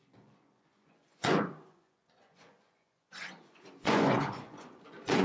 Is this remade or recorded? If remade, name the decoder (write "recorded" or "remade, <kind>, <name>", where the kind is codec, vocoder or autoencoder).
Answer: remade, vocoder, Vocos